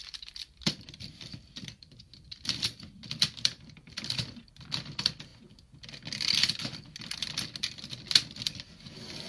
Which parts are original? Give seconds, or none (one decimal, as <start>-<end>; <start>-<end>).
5.3-9.3